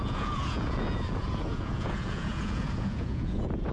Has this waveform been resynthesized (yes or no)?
yes